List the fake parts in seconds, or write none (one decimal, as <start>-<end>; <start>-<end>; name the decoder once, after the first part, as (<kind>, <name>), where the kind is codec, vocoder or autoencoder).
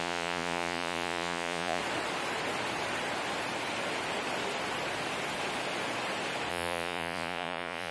0.0-1.8 (vocoder, Vocos); 6.5-7.9